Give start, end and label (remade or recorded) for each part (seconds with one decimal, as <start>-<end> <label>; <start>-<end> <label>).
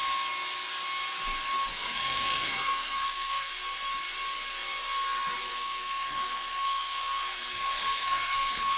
0.0-1.7 recorded; 1.7-3.5 remade; 3.5-5.5 recorded; 5.5-8.8 remade